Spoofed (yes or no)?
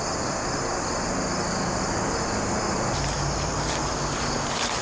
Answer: no